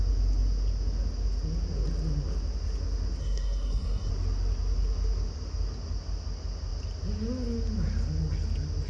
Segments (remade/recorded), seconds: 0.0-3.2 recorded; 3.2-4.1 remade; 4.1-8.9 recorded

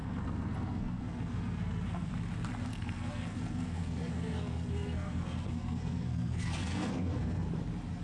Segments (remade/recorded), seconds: 0.0-2.1 remade; 2.1-2.7 recorded; 2.7-7.5 remade; 7.5-8.0 recorded

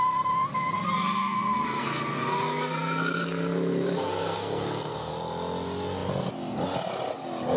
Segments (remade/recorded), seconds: 0.0-0.5 recorded; 0.5-5.1 remade; 5.1-7.6 recorded

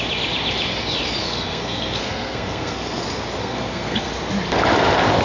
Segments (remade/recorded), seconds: 0.0-1.2 recorded; 1.2-3.0 remade; 3.0-3.4 recorded; 3.4-4.1 remade; 4.1-5.2 recorded

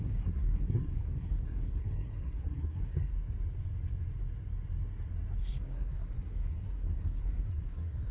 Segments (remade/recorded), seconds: 0.0-3.1 remade; 3.1-5.4 recorded; 5.4-8.1 remade

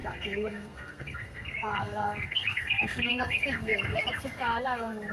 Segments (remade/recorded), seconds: 0.0-5.1 remade

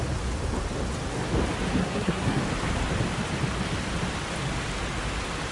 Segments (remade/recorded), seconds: 0.0-1.8 recorded; 1.8-2.4 remade; 2.4-5.5 recorded

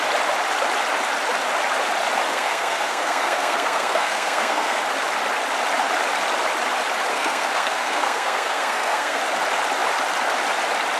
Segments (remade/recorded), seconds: 0.0-2.3 recorded; 2.3-4.8 remade; 4.8-7.1 recorded; 7.1-9.2 remade; 9.2-11.0 recorded